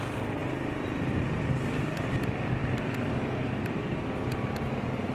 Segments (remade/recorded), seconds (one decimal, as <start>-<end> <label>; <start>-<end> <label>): 0.0-2.6 recorded; 2.6-3.8 remade; 3.8-5.1 recorded